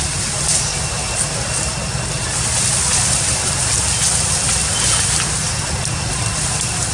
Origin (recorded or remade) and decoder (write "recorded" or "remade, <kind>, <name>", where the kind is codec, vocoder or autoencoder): recorded